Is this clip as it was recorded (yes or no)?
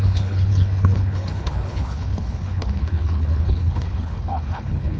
no